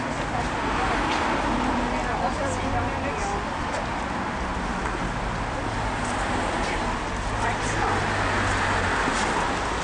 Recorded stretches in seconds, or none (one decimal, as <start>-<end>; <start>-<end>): 0.0-9.8